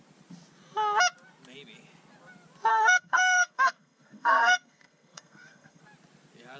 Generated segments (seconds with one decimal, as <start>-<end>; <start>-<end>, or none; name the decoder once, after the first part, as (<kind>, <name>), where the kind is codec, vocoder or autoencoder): 2.7-5.8 (codec, SNAC)